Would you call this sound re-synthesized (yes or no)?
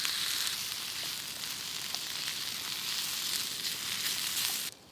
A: no